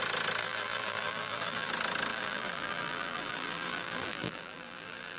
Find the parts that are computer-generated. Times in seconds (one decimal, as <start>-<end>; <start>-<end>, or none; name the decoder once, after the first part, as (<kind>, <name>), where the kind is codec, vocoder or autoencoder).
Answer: 0.4-1.7 (vocoder, BigVGAN v2); 2.1-5.2